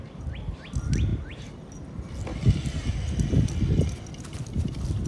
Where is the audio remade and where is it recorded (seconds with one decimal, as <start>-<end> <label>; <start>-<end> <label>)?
0.0-5.1 recorded